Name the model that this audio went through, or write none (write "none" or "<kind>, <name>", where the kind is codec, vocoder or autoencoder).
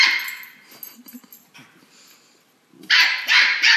none